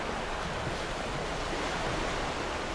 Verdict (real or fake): real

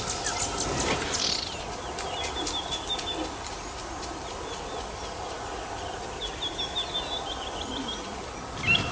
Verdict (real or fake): real